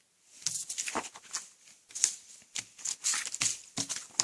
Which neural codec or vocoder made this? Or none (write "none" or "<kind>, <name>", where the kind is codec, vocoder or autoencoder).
none